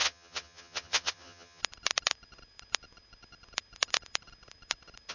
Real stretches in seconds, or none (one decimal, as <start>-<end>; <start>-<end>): 1.6-5.1